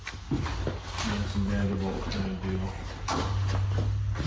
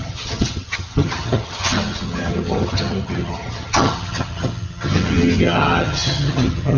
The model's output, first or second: second